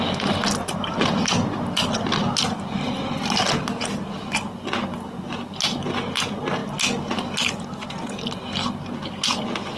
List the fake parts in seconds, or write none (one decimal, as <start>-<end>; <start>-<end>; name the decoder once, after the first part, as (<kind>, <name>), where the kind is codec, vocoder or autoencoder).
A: none